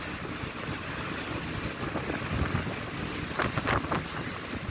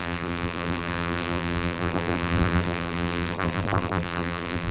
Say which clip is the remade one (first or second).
second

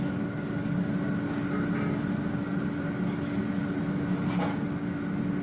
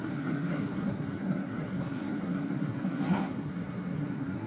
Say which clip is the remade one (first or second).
second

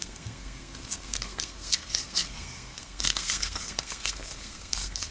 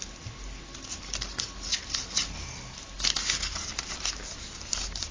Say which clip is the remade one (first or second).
first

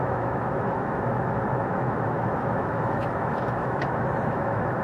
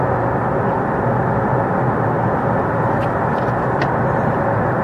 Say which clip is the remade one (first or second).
first